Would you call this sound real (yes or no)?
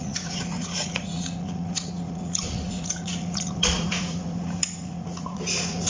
no